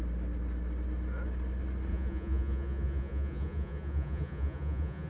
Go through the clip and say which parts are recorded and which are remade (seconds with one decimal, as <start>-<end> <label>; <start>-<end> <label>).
0.0-1.9 recorded; 1.9-5.1 remade